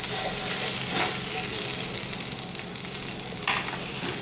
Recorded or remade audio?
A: recorded